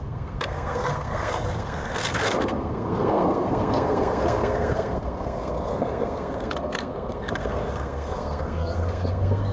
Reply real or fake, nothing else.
fake